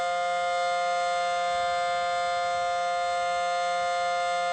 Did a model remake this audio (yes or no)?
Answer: no